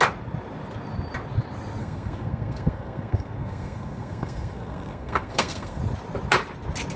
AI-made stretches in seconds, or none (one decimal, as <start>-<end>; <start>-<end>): 1.8-5.8

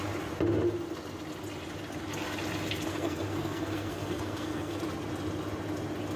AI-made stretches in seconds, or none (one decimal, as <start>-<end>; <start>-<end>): 2.9-4.8

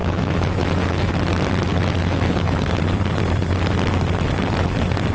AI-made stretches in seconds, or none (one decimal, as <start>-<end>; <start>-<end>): 0.0-1.1; 1.7-2.8

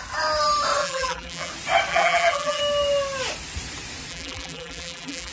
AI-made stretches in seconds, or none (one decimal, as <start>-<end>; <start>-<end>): 0.8-1.5; 1.9-2.6; 4.1-5.3

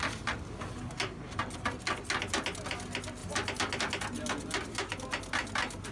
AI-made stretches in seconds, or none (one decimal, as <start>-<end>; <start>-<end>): none

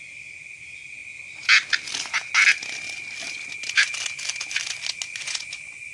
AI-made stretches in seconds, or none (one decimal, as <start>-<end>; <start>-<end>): 5.1-5.9